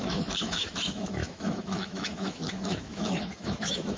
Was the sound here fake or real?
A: fake